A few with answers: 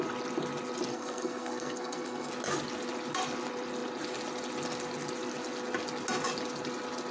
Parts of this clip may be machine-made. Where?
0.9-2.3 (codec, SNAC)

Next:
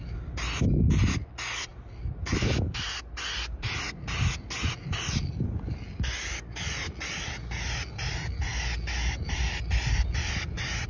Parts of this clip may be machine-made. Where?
none

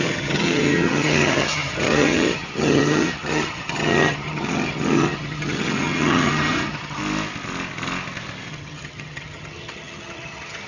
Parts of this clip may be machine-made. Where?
0.0-7.0 (vocoder, HiFi-GAN); 8.5-10.7